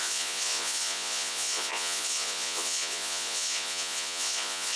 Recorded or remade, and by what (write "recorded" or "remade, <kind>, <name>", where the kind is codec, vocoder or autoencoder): remade, vocoder, Vocos